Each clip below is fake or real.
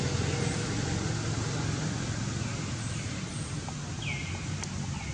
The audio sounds real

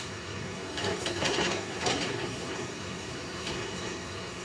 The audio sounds fake